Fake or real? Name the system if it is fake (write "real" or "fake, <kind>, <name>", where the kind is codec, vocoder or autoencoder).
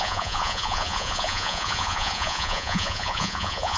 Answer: fake, vocoder, Vocos